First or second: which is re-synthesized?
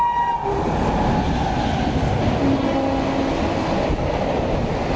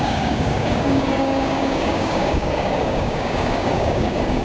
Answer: second